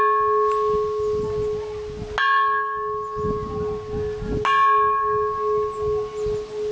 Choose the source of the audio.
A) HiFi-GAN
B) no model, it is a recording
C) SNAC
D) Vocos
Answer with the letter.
B